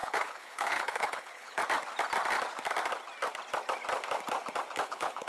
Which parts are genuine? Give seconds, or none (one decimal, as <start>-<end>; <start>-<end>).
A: 1.6-4.8